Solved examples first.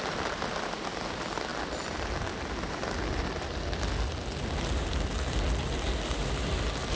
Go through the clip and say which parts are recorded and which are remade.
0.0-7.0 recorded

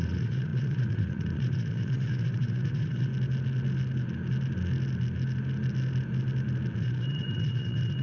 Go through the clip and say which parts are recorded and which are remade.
0.0-3.1 remade; 3.1-6.8 recorded; 6.8-8.0 remade

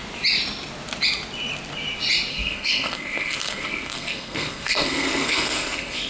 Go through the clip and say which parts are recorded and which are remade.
0.0-2.3 recorded; 2.3-6.1 remade

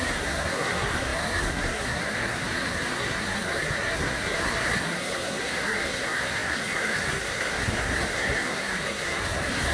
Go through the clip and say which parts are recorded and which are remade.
0.0-9.7 remade

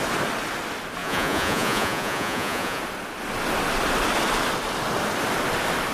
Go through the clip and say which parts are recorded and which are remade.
0.0-1.0 recorded; 1.0-2.8 remade; 2.8-5.9 recorded

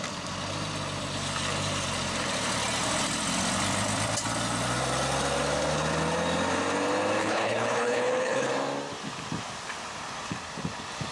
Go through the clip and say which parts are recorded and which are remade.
0.0-7.2 recorded; 7.2-8.5 remade; 8.5-11.1 recorded